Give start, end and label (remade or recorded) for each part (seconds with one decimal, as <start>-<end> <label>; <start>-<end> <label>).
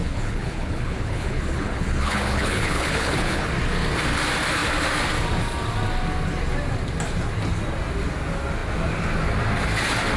0.0-3.5 remade; 3.5-10.2 recorded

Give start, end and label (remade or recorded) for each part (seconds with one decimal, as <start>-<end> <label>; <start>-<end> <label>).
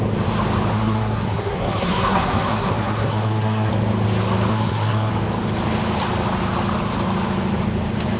0.0-0.7 recorded; 0.7-3.7 remade; 3.7-4.5 recorded; 4.5-5.1 remade; 5.1-8.2 recorded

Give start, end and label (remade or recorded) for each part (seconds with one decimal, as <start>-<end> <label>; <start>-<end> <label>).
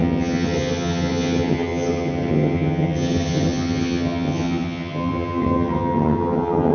0.0-6.7 remade